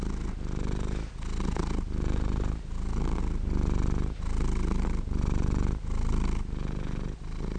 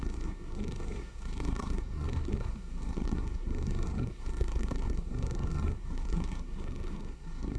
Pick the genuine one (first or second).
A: first